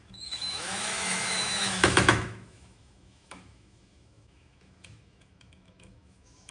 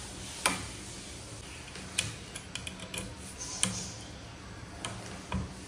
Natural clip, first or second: second